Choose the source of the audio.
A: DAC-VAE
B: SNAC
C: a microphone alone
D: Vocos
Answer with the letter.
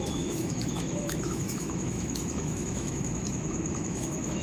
A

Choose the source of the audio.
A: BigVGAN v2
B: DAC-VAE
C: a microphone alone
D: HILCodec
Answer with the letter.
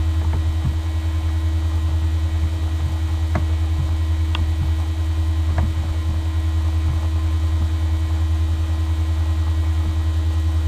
C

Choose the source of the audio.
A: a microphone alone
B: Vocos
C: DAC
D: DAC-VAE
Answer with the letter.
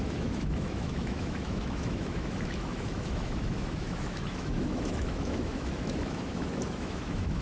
D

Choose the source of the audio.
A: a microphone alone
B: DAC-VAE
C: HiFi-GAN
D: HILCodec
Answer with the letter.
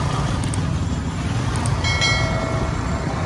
A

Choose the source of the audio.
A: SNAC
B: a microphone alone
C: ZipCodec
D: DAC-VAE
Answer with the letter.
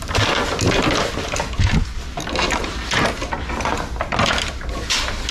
B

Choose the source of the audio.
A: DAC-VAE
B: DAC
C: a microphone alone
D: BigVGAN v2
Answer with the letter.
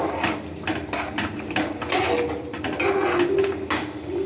C